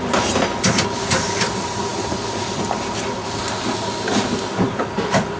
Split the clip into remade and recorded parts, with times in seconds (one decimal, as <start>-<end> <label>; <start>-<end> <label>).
0.0-5.4 recorded